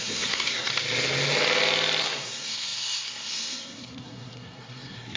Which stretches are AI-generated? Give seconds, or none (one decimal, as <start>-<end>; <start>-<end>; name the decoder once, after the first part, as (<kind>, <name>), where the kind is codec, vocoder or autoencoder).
0.0-0.7 (codec, SNAC); 2.0-5.2